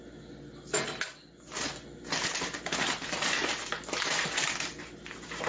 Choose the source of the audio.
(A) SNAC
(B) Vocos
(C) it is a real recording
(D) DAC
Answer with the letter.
C